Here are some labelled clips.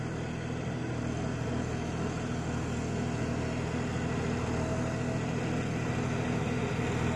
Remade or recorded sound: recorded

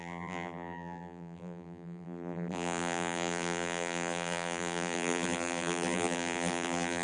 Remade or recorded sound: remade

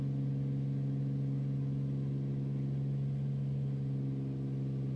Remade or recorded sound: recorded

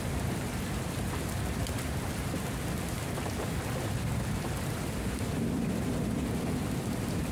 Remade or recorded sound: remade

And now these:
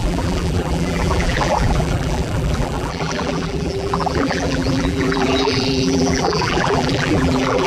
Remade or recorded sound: remade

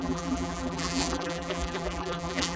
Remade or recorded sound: remade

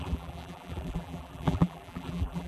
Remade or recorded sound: remade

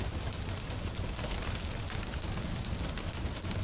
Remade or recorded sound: recorded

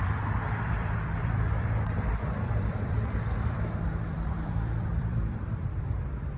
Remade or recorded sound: remade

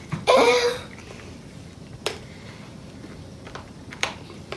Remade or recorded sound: remade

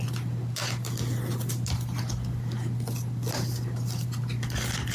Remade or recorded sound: recorded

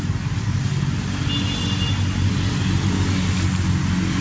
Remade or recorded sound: recorded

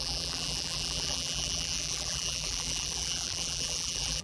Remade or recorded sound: remade